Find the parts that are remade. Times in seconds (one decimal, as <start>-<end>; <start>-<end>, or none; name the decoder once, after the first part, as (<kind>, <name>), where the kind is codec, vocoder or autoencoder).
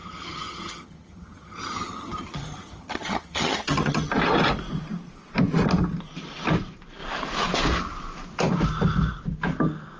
0.0-4.1 (vocoder, HiFi-GAN)